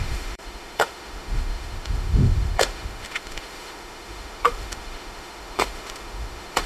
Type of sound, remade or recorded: remade